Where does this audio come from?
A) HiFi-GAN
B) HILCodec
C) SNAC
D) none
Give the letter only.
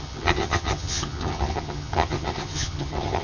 A